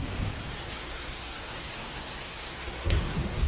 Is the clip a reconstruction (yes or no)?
yes